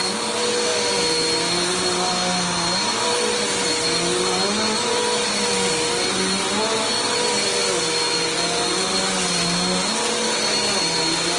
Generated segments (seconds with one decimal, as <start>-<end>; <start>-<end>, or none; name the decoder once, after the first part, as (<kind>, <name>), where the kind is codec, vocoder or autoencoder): none